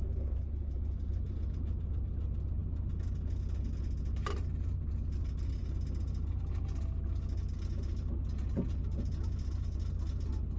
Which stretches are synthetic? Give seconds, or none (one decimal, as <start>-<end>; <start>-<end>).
none